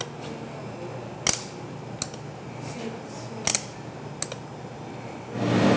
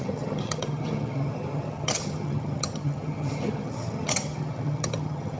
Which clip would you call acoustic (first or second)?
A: first